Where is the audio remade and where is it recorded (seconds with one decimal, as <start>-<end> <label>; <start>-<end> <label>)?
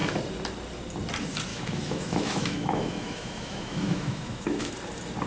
0.0-1.5 recorded; 1.5-4.7 remade; 4.7-5.3 recorded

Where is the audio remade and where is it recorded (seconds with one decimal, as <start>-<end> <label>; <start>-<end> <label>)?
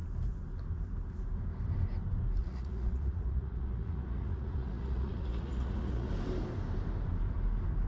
0.0-2.4 recorded; 2.4-6.1 remade; 6.1-7.9 recorded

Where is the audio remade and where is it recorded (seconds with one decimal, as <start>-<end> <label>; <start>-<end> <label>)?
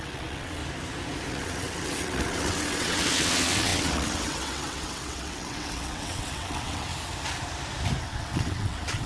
0.0-0.6 remade; 0.6-1.3 recorded; 1.3-6.9 remade; 6.9-8.0 recorded; 8.0-9.1 remade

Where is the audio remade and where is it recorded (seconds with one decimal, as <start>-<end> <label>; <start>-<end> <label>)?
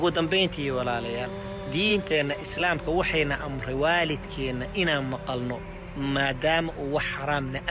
0.0-1.9 recorded; 1.9-2.6 remade; 2.6-7.7 recorded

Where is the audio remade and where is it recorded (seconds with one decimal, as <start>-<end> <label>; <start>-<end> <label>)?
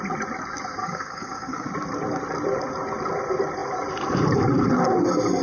0.0-0.8 recorded; 0.8-1.7 remade; 1.7-5.4 recorded